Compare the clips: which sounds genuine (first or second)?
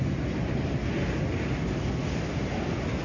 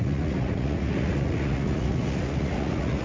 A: first